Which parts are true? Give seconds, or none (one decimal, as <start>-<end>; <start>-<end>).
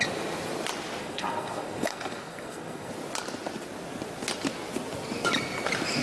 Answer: 0.0-1.0; 2.9-6.0